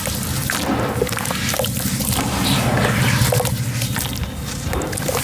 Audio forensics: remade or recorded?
recorded